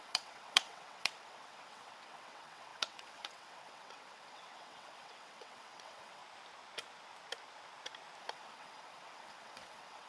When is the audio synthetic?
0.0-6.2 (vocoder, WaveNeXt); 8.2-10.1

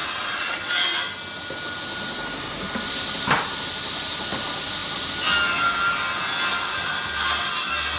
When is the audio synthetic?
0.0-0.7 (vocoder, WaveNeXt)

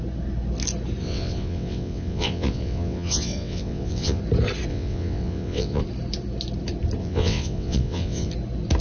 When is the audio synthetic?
1.0-4.2 (vocoder, WaveNeXt); 4.7-5.8; 7.0-8.3

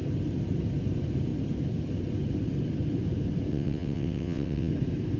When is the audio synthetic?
3.5-4.7 (vocoder, WaveNeXt)

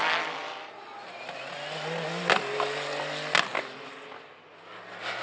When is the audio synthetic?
none